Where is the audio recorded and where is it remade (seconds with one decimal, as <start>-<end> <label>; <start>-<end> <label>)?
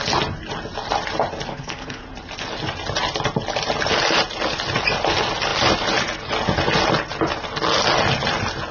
0.0-1.5 recorded; 1.5-2.0 remade; 2.0-8.7 recorded